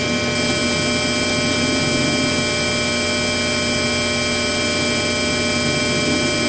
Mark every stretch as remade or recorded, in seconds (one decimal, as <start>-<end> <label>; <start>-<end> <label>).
0.0-6.5 recorded